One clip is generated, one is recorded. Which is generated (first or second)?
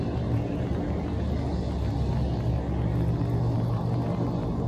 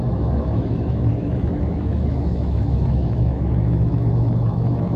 second